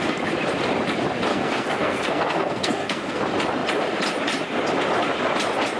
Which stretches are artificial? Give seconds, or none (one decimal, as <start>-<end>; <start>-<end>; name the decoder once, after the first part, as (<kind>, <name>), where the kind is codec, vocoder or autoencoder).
1.3-3.2 (codec, SNAC)